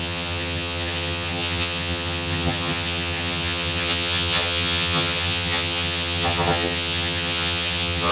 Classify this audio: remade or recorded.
remade